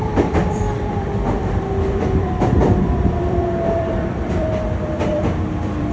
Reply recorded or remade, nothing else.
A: remade